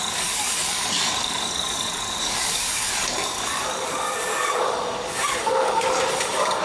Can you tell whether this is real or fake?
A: fake